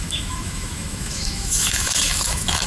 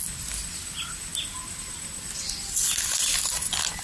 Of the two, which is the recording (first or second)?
second